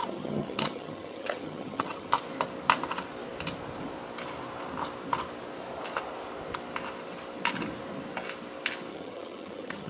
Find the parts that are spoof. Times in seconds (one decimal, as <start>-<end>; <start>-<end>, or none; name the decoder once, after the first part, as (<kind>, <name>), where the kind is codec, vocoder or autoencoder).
0.0-2.1 (vocoder, HiFi-GAN); 8.9-9.9